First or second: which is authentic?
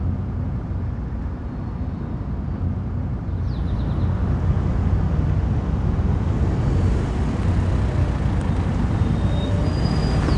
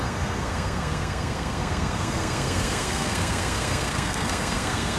first